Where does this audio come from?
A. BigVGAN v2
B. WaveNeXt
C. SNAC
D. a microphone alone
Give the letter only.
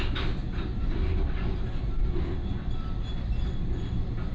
D